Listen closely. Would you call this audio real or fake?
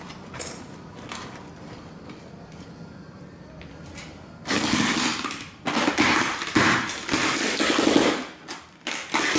real